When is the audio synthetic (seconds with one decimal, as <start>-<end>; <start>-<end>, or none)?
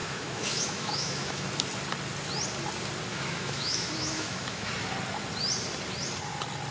0.0-1.5; 3.1-4.7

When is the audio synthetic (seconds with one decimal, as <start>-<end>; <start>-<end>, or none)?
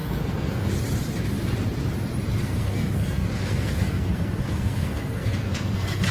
0.0-0.7; 2.4-6.1